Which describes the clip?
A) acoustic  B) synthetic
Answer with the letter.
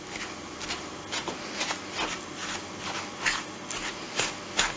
A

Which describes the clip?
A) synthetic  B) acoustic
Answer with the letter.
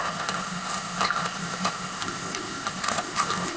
A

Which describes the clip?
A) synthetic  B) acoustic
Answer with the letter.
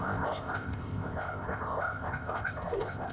A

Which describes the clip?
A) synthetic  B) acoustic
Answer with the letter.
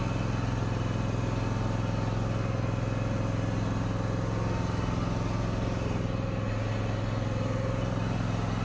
B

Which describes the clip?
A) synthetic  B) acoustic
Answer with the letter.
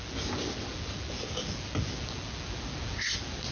B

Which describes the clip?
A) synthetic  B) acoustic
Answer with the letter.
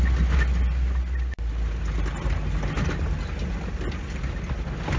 B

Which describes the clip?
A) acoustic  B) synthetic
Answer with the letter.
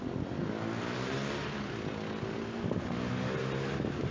A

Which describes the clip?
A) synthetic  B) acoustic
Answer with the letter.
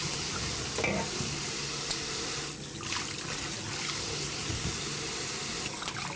B